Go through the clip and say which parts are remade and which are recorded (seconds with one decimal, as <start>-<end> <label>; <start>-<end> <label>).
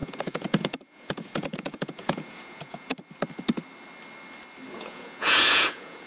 0.0-2.9 remade; 2.9-4.7 recorded; 4.7-6.1 remade